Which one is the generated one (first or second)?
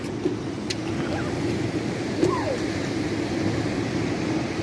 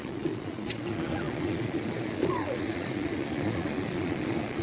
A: second